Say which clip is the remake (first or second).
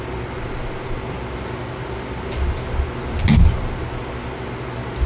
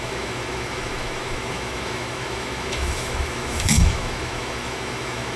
second